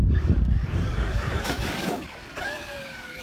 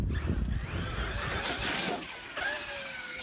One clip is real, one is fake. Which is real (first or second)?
second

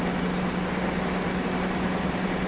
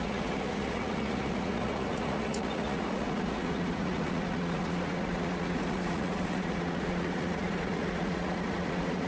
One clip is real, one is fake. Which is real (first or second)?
first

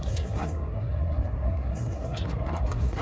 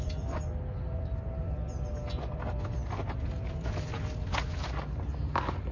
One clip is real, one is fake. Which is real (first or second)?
second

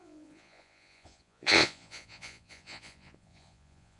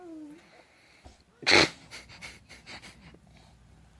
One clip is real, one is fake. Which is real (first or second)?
second